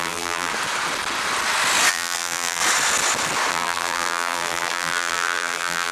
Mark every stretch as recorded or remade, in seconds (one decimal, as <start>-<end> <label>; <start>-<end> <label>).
0.0-0.5 remade; 0.5-1.9 recorded; 1.9-2.6 remade; 2.6-3.5 recorded; 3.5-5.9 remade